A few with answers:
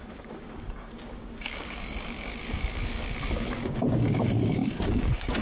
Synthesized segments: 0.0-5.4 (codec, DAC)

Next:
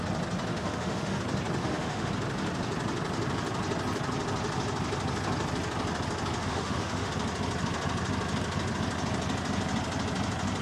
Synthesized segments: 0.5-1.2 (autoencoder, DAC-VAE); 1.6-2.1; 6.4-7.1

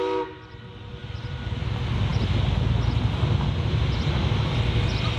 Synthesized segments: none

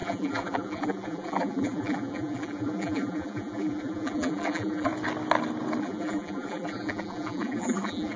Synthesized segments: 0.0-4.9 (vocoder, BigVGAN v2); 5.8-8.2